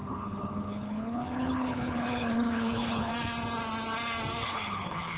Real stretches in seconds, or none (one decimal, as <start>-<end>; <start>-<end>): 3.1-4.4